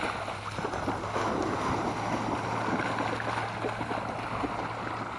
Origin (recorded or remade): recorded